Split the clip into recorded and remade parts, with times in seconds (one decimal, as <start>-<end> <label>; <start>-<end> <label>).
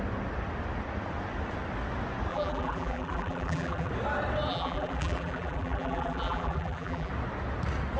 0.0-2.3 recorded; 2.3-3.9 remade; 3.9-4.5 recorded; 4.5-7.1 remade; 7.1-8.0 recorded